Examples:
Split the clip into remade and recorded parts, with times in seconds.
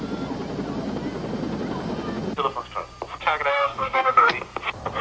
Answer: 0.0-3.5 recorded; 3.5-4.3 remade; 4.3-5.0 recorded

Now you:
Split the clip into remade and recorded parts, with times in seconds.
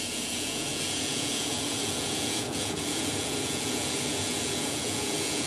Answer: 0.0-5.5 remade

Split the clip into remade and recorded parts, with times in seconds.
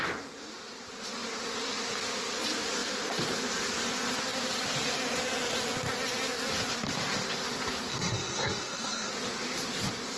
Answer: 0.0-7.9 recorded; 7.9-9.1 remade; 9.1-10.2 recorded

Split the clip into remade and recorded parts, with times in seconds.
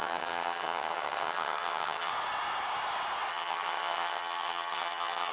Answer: 0.0-2.1 remade; 2.1-3.3 recorded; 3.3-5.3 remade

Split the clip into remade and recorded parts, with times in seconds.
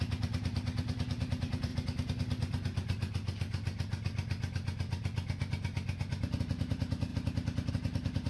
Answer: 0.0-1.7 remade; 1.7-6.4 recorded; 6.4-7.1 remade; 7.1-7.7 recorded; 7.7-8.3 remade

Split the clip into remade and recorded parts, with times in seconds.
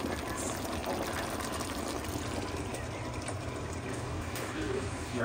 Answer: 0.0-3.9 recorded; 3.9-5.2 remade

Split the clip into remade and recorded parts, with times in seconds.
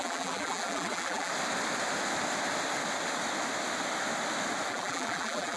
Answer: 0.0-1.3 remade; 1.3-4.7 recorded; 4.7-5.6 remade